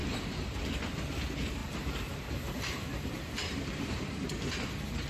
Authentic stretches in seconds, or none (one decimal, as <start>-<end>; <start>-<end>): 0.6-1.6; 4.3-5.1